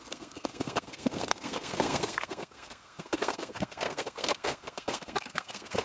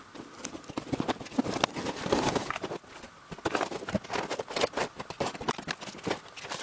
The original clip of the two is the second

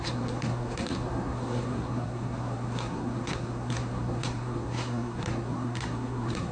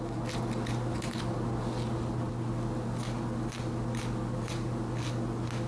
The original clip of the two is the second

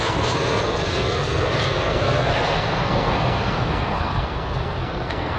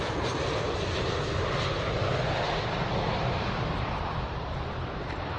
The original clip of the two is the second